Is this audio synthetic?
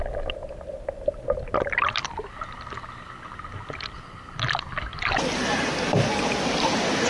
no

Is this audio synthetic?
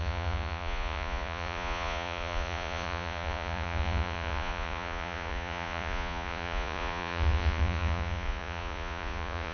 yes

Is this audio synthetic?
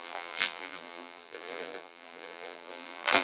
yes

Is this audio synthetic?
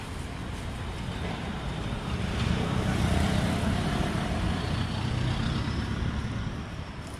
yes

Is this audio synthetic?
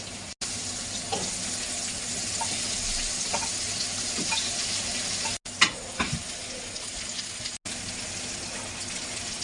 no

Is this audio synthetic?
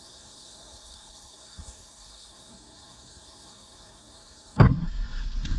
yes